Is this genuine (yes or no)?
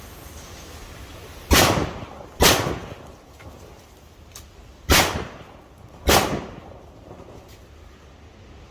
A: yes